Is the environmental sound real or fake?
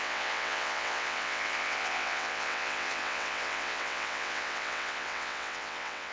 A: fake